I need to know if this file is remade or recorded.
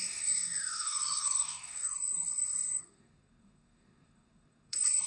remade